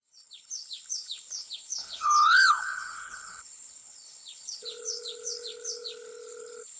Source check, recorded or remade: remade